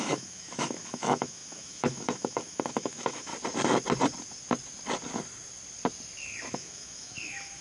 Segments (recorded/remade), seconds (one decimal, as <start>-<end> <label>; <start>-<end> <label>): 0.0-3.3 remade; 3.3-6.5 recorded; 6.5-7.6 remade